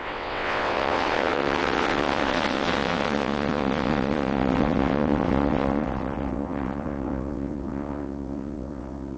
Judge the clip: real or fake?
fake